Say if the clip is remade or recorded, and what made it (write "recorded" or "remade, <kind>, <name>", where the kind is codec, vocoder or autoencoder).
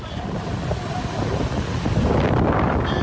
recorded